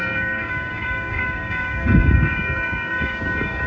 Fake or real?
fake